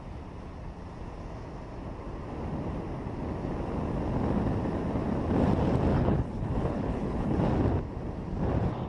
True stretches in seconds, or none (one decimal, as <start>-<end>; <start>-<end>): 0.0-5.9; 7.4-8.9